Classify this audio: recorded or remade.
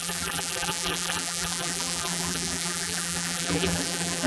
remade